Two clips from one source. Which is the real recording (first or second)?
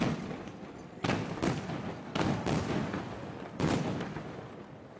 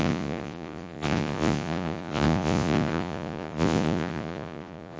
first